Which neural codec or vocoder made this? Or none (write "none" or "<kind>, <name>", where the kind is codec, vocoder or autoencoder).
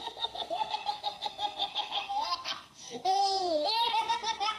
codec, SNAC